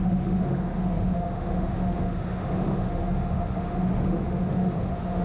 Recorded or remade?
remade